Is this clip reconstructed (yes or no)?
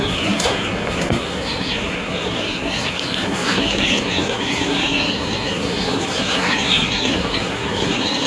yes